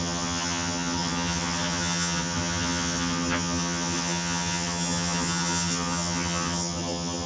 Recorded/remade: remade